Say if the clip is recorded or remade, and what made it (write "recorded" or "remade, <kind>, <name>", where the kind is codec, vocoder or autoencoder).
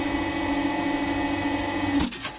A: recorded